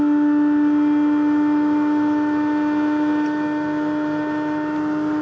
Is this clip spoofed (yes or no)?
no